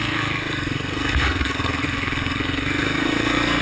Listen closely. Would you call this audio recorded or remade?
remade